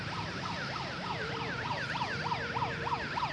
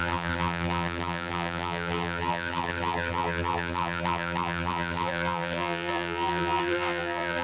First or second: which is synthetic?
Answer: second